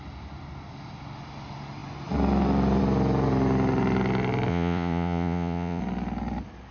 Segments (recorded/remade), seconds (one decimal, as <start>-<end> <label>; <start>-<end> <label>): 0.0-4.5 recorded; 4.5-5.8 remade; 5.8-6.7 recorded